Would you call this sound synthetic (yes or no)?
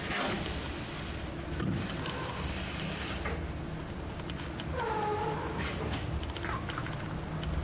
no